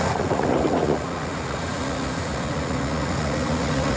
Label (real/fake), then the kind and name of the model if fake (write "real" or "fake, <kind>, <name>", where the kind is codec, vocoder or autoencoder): fake, vocoder, Vocos